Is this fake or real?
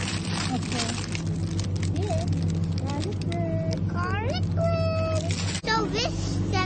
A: real